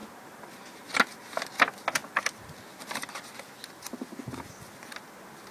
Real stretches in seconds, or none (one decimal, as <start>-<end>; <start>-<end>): 0.0-5.5